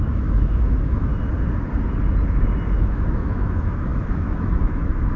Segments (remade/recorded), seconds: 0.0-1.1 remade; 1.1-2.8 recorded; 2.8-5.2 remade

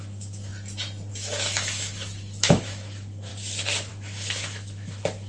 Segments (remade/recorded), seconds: 0.0-0.5 remade; 0.5-1.1 recorded; 1.1-3.3 remade; 3.3-3.9 recorded; 3.9-5.3 remade

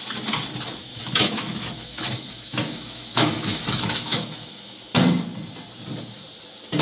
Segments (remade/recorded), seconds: 0.0-0.7 recorded; 0.7-4.8 remade; 4.8-6.8 recorded

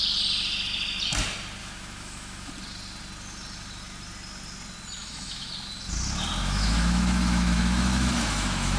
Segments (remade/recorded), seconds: 0.0-1.6 recorded; 1.6-2.5 remade; 2.5-5.0 recorded; 5.0-5.5 remade; 5.5-6.4 recorded; 6.4-8.8 remade